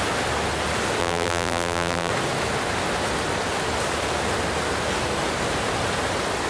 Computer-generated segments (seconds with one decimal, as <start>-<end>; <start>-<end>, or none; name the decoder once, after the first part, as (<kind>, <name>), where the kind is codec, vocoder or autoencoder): 1.0-2.1 (vocoder, BigVGAN v2)

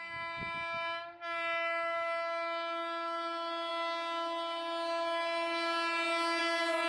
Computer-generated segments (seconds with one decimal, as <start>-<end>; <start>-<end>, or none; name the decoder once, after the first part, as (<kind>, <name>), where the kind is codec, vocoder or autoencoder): none

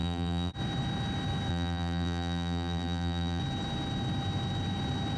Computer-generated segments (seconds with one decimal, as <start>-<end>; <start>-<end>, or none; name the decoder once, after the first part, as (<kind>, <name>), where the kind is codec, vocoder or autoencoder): 0.0-0.5 (vocoder, BigVGAN v2); 1.5-3.4

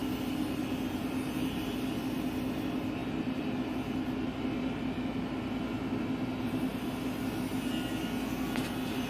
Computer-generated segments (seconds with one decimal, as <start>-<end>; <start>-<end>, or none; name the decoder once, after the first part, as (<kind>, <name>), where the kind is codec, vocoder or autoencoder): none

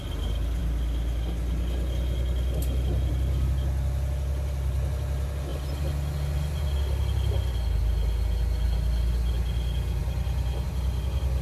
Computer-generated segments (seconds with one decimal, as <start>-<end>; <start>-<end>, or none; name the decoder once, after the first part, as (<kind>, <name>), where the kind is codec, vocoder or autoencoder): none

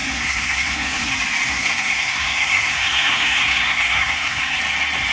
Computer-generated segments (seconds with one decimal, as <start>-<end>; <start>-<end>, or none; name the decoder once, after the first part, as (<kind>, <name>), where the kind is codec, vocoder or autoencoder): 0.0-1.1 (codec, SNAC); 1.5-4.6

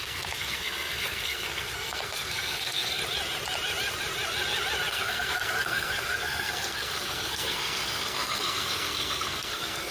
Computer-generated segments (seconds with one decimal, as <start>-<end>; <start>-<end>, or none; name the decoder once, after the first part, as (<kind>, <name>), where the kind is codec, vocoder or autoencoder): 0.0-3.0 (codec, SNAC); 4.9-9.9